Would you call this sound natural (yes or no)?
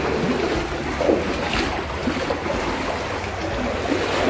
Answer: yes